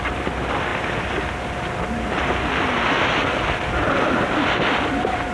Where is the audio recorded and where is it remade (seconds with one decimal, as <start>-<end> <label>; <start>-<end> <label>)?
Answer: 0.0-5.3 recorded